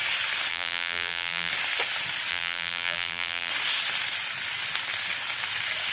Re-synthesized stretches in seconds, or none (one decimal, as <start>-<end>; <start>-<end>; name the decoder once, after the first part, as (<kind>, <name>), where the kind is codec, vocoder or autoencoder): 0.5-1.5 (vocoder, BigVGAN v2); 2.3-3.5